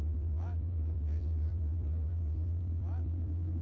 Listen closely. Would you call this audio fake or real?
fake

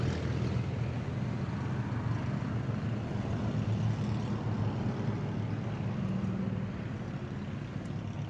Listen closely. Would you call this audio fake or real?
real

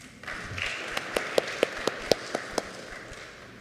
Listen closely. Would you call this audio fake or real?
fake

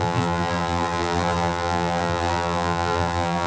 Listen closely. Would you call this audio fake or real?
fake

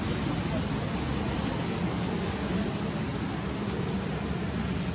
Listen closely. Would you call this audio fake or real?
real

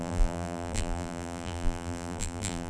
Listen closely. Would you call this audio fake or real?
fake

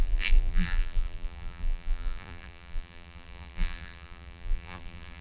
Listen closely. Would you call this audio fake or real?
fake